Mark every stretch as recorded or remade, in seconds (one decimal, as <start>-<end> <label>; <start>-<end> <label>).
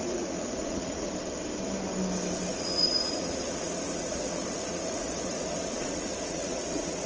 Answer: 0.0-1.1 remade; 1.1-2.5 recorded; 2.5-7.1 remade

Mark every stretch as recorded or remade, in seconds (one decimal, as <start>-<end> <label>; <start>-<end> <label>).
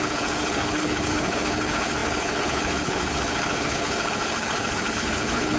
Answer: 0.0-5.6 remade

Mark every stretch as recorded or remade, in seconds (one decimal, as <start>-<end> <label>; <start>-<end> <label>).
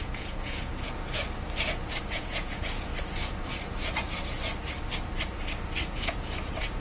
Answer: 0.0-0.7 remade; 0.7-2.0 recorded; 2.0-2.9 remade; 2.9-5.9 recorded; 5.9-6.8 remade